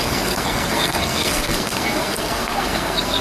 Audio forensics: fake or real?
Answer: fake